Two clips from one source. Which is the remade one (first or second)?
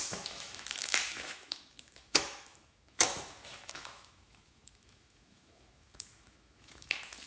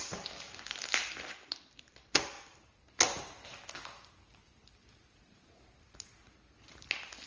first